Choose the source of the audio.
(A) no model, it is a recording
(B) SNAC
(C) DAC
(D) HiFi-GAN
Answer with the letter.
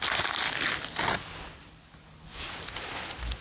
A